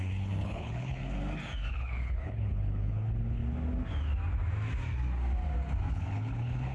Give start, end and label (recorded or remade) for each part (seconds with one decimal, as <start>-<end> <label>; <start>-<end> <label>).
0.0-1.0 remade; 1.0-1.7 recorded; 1.7-3.4 remade; 3.4-5.9 recorded; 5.9-6.7 remade